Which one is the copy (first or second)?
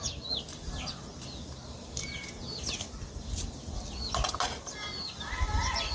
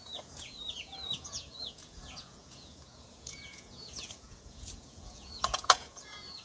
second